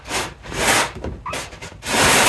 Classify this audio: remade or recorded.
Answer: recorded